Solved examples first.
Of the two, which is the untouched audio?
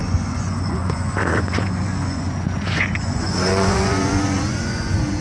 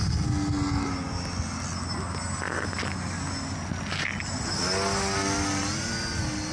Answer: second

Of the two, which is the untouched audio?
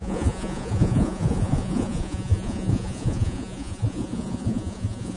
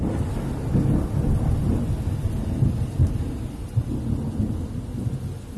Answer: second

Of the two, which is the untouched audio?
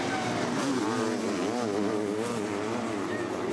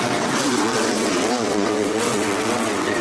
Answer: first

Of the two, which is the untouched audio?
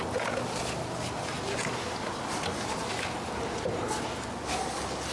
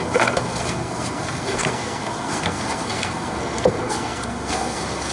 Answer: first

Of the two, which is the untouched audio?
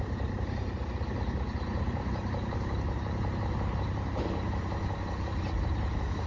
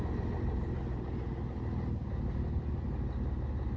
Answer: second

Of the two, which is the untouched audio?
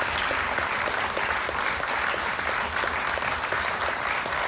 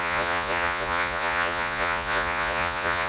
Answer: first